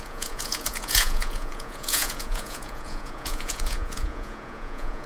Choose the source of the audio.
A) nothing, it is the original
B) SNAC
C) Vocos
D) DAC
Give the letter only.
C